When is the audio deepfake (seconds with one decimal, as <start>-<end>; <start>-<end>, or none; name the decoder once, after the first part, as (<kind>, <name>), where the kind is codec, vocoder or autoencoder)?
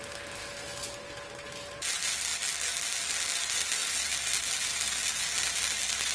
none